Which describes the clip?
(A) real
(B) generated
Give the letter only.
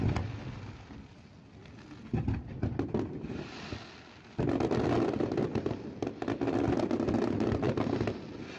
A